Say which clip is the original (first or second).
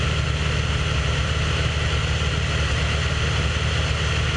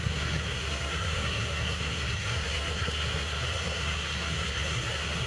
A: first